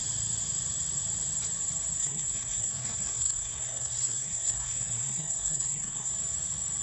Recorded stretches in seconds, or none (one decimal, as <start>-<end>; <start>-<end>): 0.0-2.0; 6.1-6.8